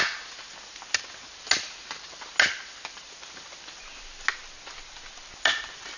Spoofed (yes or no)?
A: no